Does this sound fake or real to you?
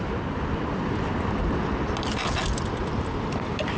real